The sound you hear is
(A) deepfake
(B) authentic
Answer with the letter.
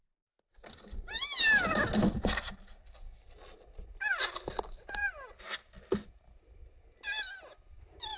B